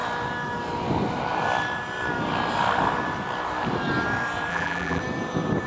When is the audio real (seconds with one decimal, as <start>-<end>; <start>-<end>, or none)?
0.0-4.5; 5.0-5.7